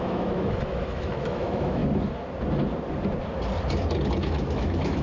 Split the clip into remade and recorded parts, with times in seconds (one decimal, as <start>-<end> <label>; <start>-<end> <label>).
0.0-1.8 remade; 1.8-4.2 recorded; 4.2-5.0 remade